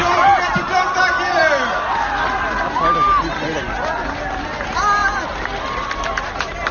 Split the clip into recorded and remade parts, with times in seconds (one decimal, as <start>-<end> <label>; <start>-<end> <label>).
0.0-6.7 recorded